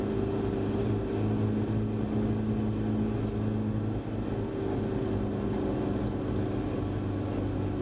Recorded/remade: recorded